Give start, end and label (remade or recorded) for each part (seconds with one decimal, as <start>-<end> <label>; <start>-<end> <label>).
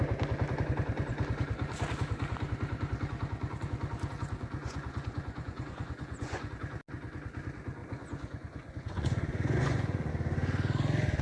0.0-4.6 recorded; 4.6-6.5 remade; 6.5-7.8 recorded; 7.8-10.1 remade; 10.1-11.2 recorded